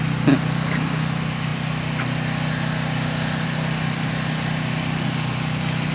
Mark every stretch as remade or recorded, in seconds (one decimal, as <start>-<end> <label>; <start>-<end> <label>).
0.0-5.9 recorded